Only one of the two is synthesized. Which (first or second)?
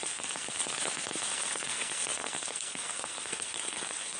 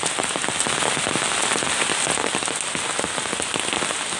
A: first